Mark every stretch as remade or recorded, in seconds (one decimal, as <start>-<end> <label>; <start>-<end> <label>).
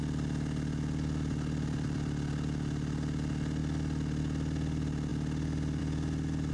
0.0-6.5 recorded